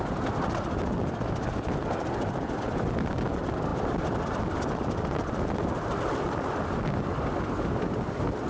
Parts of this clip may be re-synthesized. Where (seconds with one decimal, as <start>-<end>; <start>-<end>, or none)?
none